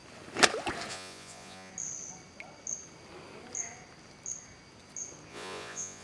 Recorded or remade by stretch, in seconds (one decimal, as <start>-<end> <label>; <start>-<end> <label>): 0.0-0.9 recorded; 0.9-1.7 remade; 1.7-5.3 recorded; 5.3-6.0 remade